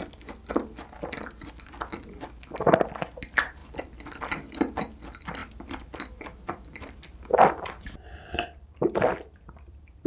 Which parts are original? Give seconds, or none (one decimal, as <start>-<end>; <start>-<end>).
0.0-5.4